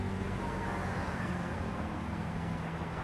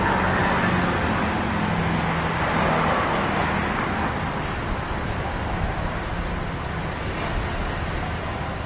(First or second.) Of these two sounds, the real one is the second